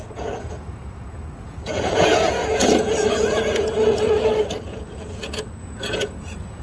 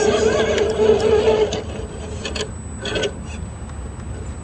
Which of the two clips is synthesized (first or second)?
first